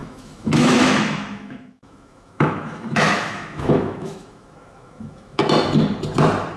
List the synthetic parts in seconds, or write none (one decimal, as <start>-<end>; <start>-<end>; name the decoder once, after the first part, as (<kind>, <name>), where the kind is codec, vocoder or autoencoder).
0.0-5.4 (autoencoder, DAC-VAE)